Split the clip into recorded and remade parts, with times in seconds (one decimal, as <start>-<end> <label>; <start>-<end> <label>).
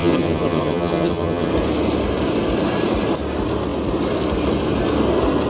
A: 0.0-1.5 remade; 1.5-5.5 recorded